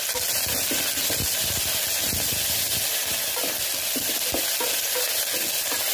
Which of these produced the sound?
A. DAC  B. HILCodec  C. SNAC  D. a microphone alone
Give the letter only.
D